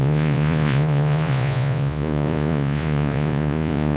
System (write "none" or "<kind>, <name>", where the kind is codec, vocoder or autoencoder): vocoder, Vocos